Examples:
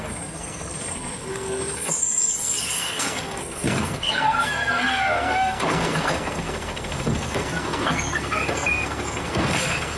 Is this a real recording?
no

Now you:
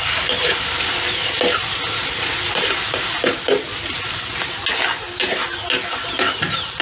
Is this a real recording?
yes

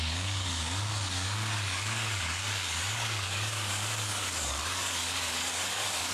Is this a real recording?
no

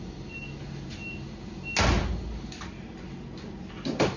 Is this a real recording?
yes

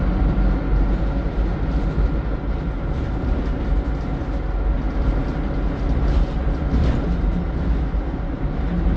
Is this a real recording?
yes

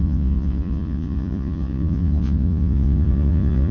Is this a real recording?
no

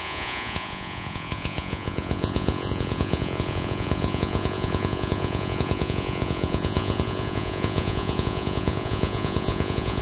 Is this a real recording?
no